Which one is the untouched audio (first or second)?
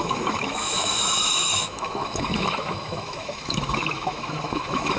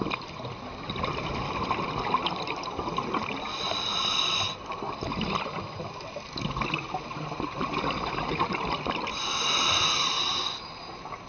second